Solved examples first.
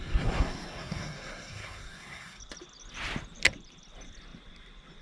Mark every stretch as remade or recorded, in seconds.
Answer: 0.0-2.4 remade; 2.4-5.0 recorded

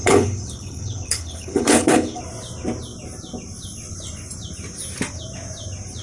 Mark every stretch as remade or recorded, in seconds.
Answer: 0.0-2.2 remade; 2.2-6.0 recorded

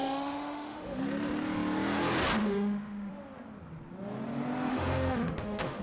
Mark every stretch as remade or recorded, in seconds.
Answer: 0.0-1.0 remade; 1.0-2.4 recorded; 2.4-3.1 remade; 3.1-4.7 recorded; 4.7-5.8 remade

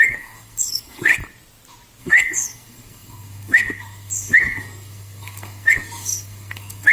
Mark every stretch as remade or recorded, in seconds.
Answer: 0.0-1.1 remade; 1.1-2.0 recorded; 2.0-6.9 remade